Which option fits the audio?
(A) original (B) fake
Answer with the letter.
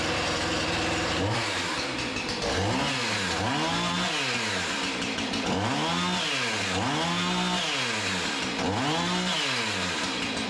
A